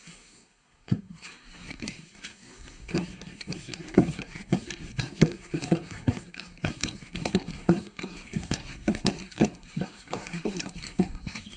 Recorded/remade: remade